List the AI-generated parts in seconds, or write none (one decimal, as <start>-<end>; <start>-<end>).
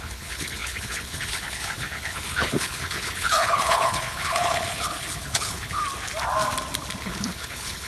0.0-5.8; 7.0-7.9